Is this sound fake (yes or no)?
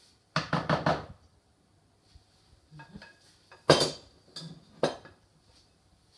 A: no